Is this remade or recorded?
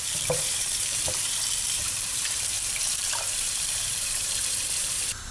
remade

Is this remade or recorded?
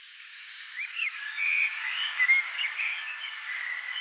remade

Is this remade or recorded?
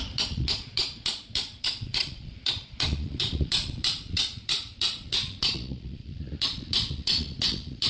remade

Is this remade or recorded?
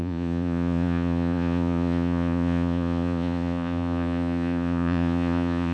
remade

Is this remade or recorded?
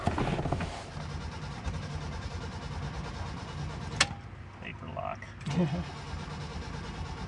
recorded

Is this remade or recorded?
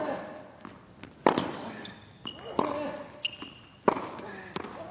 recorded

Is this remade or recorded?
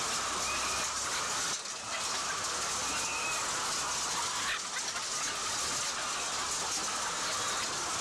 recorded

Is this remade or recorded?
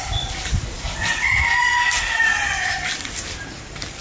remade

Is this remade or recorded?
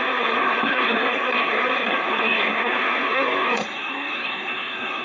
remade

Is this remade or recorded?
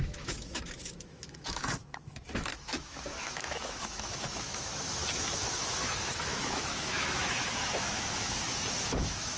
remade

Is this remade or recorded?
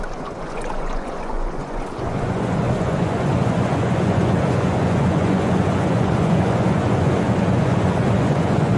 remade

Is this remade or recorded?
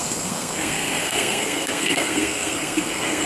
remade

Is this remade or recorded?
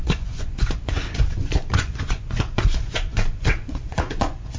remade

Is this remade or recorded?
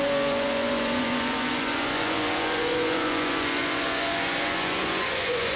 remade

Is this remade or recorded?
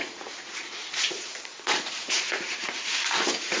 remade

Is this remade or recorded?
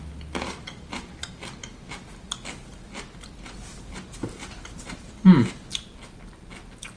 recorded